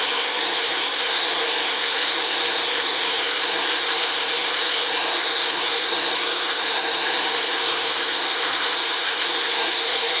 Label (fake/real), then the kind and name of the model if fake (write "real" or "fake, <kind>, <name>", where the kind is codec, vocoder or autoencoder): fake, codec, SNAC